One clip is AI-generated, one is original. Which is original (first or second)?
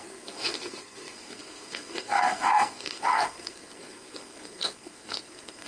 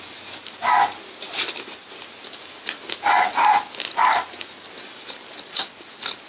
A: second